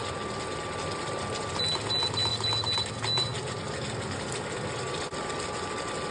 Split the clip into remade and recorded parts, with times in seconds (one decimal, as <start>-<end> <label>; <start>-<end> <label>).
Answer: 0.0-6.1 recorded